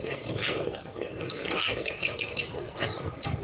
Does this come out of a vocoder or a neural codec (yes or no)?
yes